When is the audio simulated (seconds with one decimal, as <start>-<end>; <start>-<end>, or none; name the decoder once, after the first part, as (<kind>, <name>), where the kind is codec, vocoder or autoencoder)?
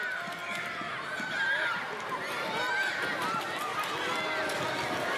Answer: none